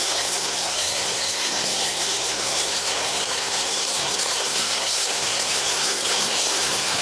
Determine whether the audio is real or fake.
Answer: fake